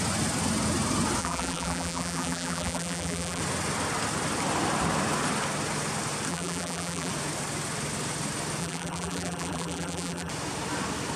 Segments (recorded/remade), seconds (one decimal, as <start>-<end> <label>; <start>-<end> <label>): 0.0-1.2 recorded; 1.2-3.4 remade; 3.4-6.3 recorded; 6.3-7.1 remade; 7.1-8.6 recorded; 8.6-10.3 remade; 10.3-11.2 recorded